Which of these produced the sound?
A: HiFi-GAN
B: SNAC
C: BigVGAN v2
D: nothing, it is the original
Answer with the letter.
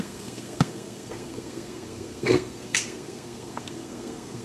B